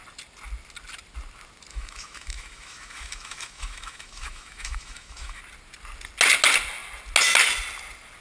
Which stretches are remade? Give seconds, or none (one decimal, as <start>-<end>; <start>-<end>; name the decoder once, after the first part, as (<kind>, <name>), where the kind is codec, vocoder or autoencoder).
1.7-5.4 (autoencoder, DAC-VAE)

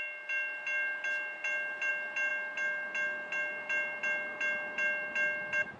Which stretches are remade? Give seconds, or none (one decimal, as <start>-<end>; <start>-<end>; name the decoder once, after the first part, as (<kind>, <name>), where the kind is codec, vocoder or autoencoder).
none

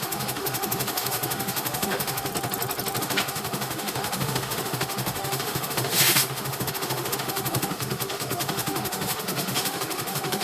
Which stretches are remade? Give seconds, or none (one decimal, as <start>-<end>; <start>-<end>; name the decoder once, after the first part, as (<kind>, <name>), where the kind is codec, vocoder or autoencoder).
0.0-2.3 (autoencoder, DAC-VAE); 3.0-10.4

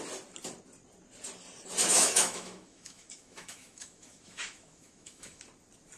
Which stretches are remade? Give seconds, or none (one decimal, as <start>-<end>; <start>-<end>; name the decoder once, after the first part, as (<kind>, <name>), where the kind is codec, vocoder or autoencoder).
1.8-5.4 (autoencoder, DAC-VAE)

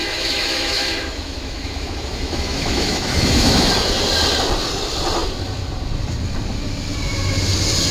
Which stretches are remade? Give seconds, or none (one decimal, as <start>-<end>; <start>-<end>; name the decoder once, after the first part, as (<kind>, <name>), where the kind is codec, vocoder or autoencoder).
0.0-3.7 (autoencoder, DAC-VAE)

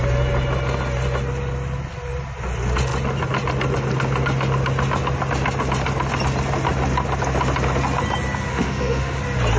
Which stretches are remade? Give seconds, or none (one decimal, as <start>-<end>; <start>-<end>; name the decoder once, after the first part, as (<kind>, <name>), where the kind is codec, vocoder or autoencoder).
8.5-9.2 (autoencoder, DAC-VAE)